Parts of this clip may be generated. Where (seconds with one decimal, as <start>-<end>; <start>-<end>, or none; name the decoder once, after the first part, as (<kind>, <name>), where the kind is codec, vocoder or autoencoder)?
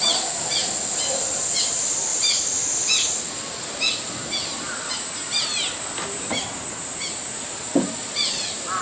none